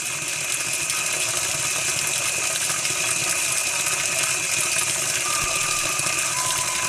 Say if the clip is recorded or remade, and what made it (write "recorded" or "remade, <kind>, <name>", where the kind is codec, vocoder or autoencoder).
recorded